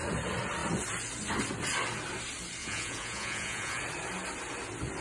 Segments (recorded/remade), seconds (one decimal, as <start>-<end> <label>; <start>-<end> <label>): 0.0-2.6 recorded; 2.6-3.8 remade; 3.8-5.0 recorded